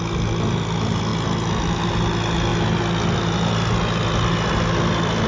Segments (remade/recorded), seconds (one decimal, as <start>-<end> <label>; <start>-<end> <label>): 0.0-5.3 recorded